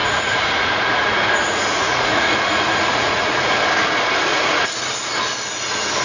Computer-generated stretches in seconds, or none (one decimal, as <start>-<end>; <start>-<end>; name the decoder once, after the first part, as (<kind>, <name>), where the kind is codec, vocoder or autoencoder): 0.0-3.6 (vocoder, Vocos); 4.3-4.8